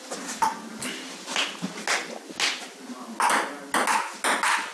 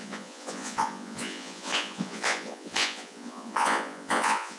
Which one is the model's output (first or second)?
second